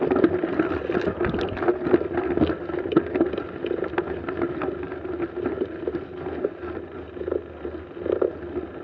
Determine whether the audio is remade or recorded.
recorded